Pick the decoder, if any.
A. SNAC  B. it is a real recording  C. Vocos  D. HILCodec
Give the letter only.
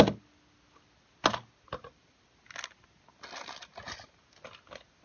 B